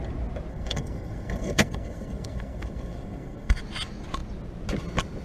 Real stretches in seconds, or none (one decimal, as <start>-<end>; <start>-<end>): 0.0-0.5; 3.6-5.2